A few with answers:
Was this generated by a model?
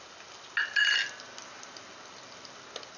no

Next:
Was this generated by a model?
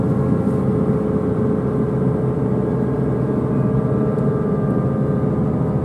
no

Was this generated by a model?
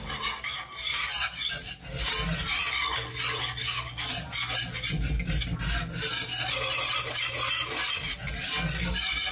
no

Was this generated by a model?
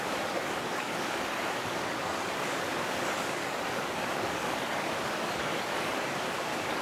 yes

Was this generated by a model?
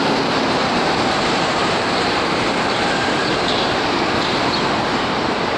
yes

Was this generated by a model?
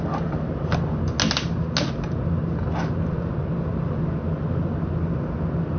no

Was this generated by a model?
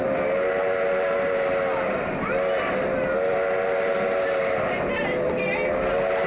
no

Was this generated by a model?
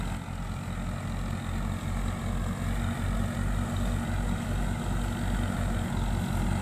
no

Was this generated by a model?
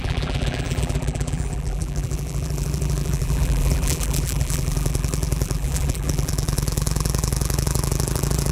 yes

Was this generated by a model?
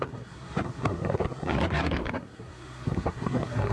yes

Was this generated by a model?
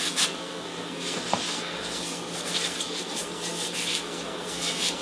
yes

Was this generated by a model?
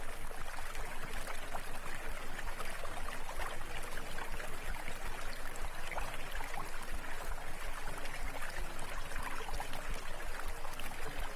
no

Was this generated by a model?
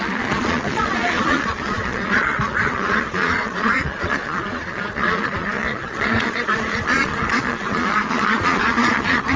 yes